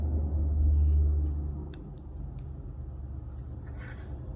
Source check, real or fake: real